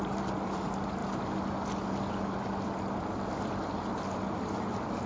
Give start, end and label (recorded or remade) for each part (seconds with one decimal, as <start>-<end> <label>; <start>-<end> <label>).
0.0-5.1 recorded